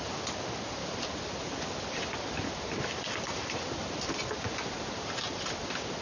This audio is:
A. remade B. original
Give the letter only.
B